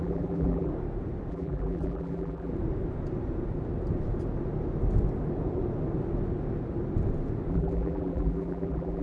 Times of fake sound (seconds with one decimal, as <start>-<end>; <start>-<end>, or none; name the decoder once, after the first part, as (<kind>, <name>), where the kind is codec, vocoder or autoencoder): 0.0-0.7 (vocoder, BigVGAN v2); 1.3-2.5; 7.5-9.0